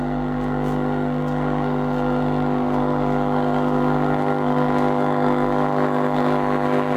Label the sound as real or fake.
fake